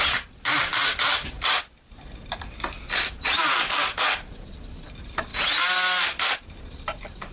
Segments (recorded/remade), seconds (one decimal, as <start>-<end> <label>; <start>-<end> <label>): 0.0-5.3 remade; 5.3-6.4 recorded; 6.4-7.3 remade